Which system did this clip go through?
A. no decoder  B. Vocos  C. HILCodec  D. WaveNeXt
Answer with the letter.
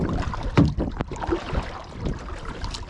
A